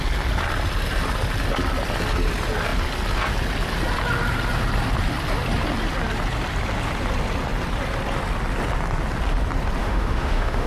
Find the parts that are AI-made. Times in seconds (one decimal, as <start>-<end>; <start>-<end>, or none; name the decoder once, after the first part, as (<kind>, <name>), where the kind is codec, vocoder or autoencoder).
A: 9.8-10.7 (autoencoder, DAC-VAE)